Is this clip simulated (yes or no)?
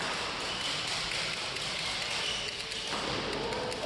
no